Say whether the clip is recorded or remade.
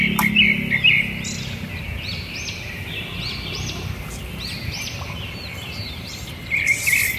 recorded